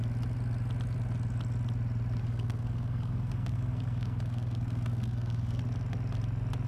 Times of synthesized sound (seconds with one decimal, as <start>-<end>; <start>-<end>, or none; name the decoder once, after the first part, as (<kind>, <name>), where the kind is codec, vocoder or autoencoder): 2.2-5.6 (codec, SNAC)